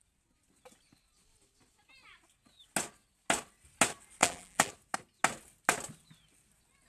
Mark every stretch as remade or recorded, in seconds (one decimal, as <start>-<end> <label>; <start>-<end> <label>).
0.0-4.2 recorded; 4.2-4.7 remade; 4.7-6.9 recorded